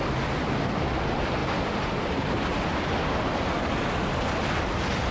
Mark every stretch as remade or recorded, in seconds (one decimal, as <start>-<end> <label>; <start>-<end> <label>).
0.0-5.1 recorded